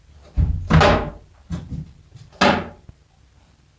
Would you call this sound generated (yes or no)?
no